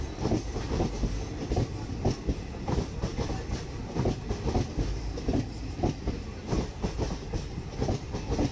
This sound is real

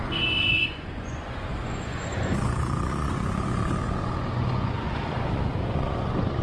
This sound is fake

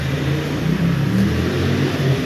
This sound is real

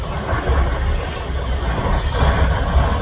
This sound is real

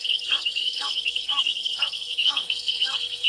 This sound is fake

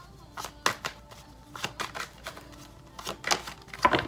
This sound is real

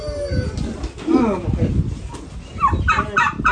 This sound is real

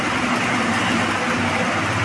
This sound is real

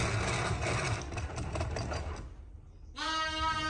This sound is real